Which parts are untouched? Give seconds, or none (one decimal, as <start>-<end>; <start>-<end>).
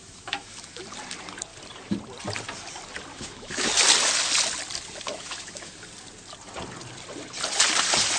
0.8-3.1; 3.7-5.1; 5.7-8.2